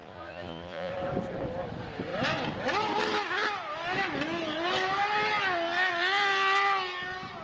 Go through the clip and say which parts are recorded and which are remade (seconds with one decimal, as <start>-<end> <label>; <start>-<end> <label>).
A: 0.0-0.9 remade; 0.9-7.4 recorded